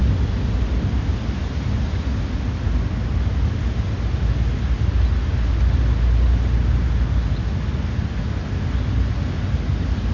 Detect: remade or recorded recorded